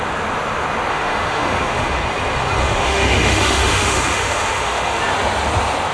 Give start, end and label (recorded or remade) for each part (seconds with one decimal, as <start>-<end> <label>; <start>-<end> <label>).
0.0-0.9 recorded; 0.9-2.0 remade; 2.0-2.6 recorded; 2.6-5.0 remade; 5.0-5.9 recorded